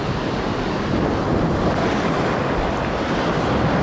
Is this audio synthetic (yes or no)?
no